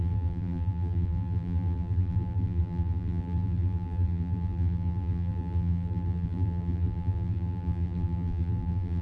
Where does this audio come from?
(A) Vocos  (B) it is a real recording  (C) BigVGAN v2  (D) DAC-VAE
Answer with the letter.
C